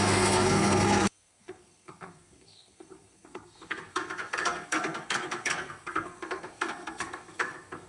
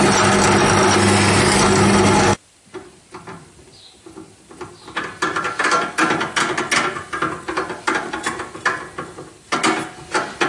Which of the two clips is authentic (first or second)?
second